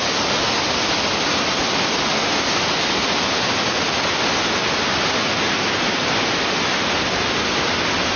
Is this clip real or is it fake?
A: real